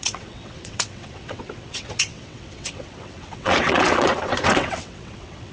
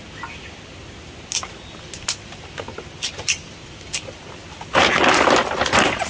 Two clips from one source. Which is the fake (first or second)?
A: first